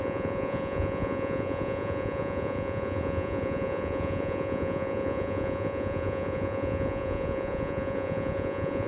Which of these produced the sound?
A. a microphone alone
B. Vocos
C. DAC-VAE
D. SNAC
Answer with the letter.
B